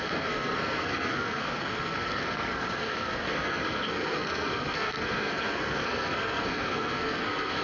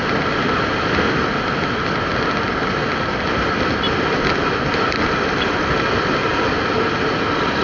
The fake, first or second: first